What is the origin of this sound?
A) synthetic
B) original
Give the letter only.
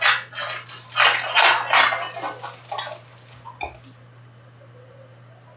B